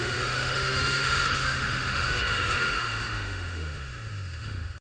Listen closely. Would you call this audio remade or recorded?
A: remade